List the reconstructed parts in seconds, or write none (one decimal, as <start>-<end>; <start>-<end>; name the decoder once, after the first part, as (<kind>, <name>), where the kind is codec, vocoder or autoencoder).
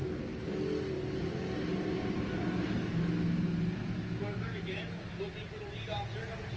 none